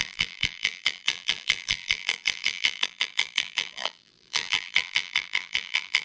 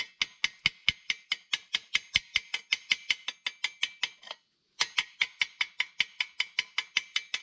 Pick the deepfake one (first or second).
first